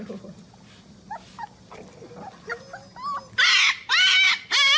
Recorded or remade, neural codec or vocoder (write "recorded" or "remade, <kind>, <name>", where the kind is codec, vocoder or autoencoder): recorded